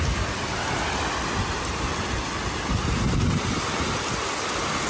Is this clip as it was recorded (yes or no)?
yes